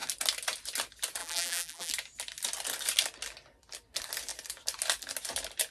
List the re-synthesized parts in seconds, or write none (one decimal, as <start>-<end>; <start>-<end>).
1.2-1.9